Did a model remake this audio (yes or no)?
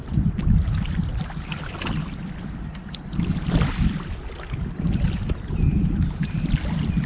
no